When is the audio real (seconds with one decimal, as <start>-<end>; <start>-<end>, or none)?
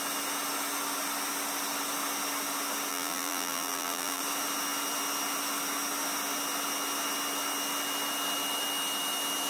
0.0-2.9; 4.2-9.5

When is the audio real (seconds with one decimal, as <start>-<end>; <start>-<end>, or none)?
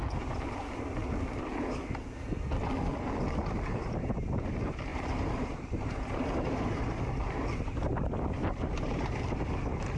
0.0-4.9; 9.3-10.0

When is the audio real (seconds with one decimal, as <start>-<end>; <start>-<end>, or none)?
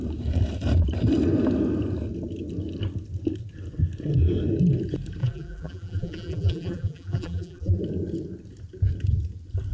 0.0-5.2; 7.8-9.7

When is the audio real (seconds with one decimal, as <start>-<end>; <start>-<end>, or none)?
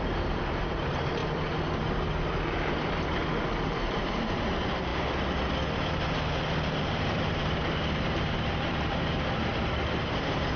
1.2-3.6; 4.9-6.8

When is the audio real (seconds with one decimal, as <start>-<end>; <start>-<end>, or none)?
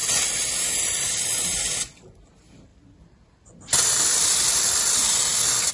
0.0-2.7; 4.8-5.7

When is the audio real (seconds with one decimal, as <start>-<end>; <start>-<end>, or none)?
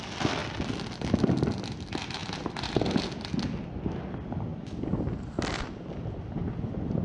0.0-7.0